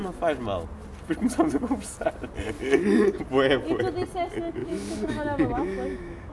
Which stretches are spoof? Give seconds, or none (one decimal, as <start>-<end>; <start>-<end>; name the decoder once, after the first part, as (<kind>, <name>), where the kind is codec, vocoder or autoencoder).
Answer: 4.6-6.3 (autoencoder, DAC-VAE)